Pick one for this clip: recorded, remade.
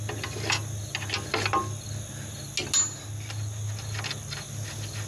recorded